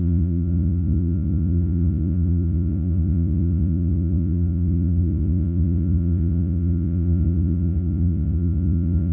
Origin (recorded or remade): remade